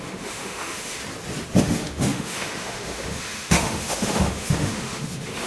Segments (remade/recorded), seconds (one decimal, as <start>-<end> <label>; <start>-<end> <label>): 0.0-1.0 remade; 1.0-1.6 recorded; 1.6-5.5 remade